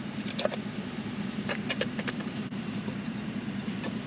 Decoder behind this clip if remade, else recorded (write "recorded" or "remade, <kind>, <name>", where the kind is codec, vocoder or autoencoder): remade, vocoder, BigVGAN v2